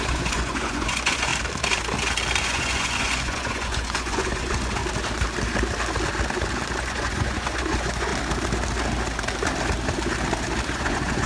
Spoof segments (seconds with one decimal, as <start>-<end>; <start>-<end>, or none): 0.0-1.3; 2.4-4.8; 6.8-8.1; 10.7-11.3